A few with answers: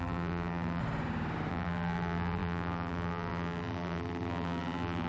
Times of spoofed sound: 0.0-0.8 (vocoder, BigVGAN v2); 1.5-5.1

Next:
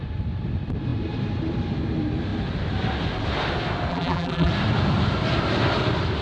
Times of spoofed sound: 3.9-4.5 (vocoder, BigVGAN v2)

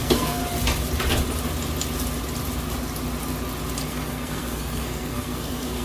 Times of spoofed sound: 0.0-0.4 (codec, SNAC); 3.9-5.8

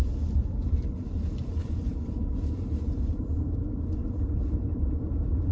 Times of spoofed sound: 0.0-5.5 (vocoder, BigVGAN v2)

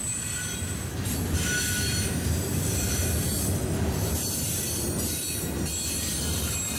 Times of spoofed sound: none

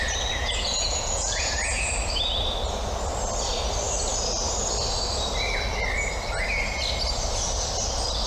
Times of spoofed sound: 0.4-1.9 (vocoder, Vocos)